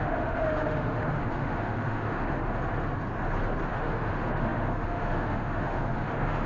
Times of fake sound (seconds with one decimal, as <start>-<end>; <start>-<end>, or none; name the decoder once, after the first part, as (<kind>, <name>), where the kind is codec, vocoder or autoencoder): 0.0-2.6 (autoencoder, DAC-VAE); 3.7-6.5